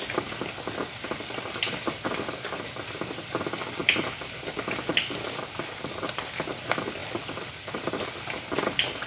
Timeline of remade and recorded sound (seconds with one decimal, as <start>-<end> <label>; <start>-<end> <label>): 0.0-9.1 recorded